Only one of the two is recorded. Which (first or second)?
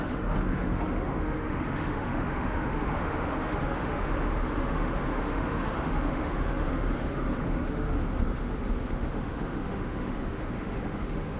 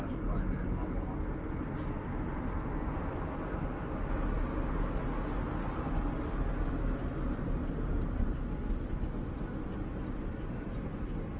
second